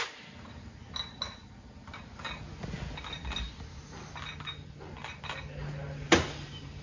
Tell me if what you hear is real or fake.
real